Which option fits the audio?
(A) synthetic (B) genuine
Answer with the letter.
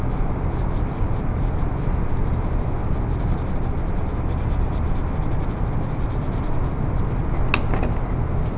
B